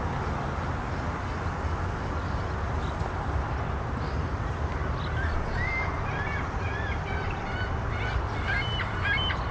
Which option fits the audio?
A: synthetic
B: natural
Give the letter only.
B